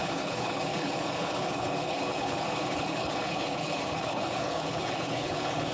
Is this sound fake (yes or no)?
yes